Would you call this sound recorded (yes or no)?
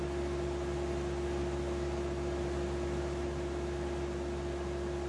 yes